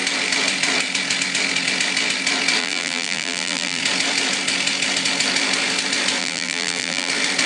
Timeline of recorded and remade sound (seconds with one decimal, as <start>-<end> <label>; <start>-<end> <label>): 0.0-2.6 recorded; 2.6-3.8 remade; 3.8-6.2 recorded; 6.2-7.1 remade; 7.1-7.5 recorded